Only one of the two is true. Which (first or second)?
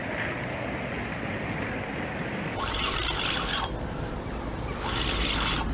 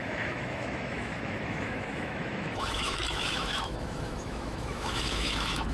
first